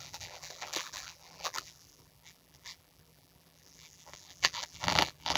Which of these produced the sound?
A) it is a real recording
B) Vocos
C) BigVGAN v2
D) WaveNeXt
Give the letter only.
C